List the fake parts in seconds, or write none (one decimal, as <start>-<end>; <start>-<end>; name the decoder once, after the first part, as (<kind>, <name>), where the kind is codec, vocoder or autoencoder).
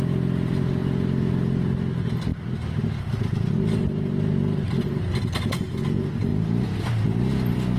none